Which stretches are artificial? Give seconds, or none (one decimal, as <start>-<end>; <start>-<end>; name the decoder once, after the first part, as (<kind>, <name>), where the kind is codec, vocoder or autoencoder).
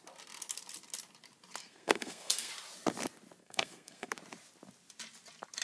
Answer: 1.6-2.5 (codec, SNAC); 3.4-4.1